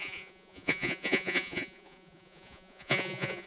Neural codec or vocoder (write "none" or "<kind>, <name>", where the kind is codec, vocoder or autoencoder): vocoder, Vocos